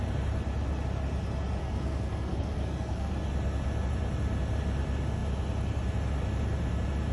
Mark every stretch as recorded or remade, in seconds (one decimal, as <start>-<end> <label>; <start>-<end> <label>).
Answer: 0.0-1.6 recorded; 1.6-3.1 remade; 3.1-7.1 recorded